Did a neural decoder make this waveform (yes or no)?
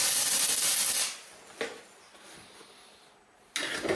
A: no